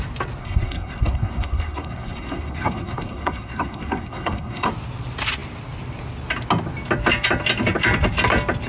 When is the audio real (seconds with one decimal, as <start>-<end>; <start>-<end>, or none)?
0.0-0.4; 4.7-8.7